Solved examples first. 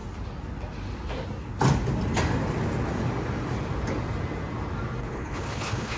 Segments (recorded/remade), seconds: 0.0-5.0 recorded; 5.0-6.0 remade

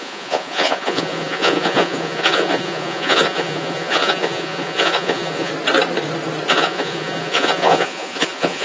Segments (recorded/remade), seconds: 0.0-5.5 remade; 5.5-6.5 recorded; 6.5-8.6 remade